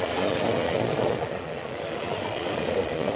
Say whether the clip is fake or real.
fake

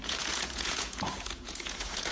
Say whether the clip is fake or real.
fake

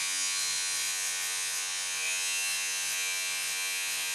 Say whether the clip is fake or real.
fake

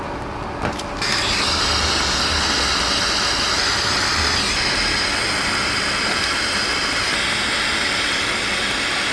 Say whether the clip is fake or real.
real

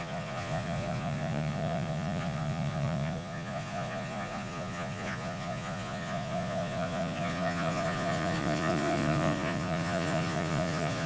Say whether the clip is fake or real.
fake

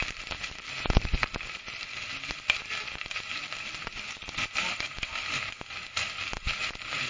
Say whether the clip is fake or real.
real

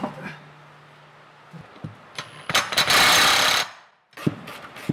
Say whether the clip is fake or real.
real